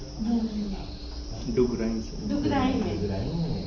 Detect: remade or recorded recorded